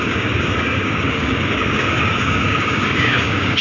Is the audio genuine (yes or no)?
no